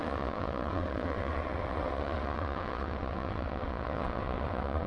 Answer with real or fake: fake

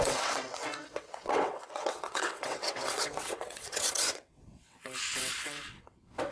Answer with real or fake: fake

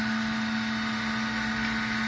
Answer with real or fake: real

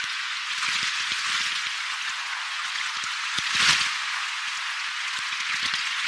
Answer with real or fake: fake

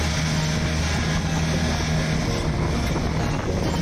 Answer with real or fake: real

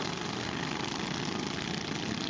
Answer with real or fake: real